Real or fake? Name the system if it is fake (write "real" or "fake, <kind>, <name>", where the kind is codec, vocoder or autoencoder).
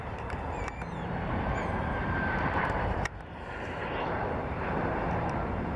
fake, vocoder, BigVGAN v2